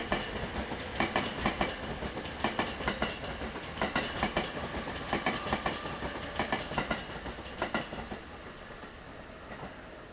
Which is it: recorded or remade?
recorded